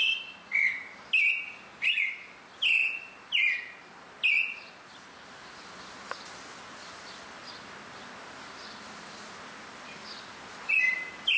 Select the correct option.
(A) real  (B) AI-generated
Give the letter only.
A